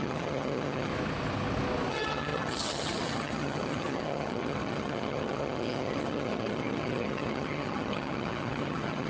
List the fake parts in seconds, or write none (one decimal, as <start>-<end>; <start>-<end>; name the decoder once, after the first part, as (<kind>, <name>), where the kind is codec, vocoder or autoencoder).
0.0-0.9 (vocoder, HiFi-GAN); 1.9-9.1